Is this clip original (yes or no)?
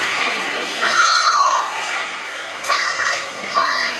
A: no